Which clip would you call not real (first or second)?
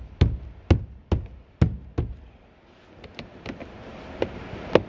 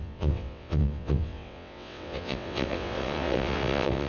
second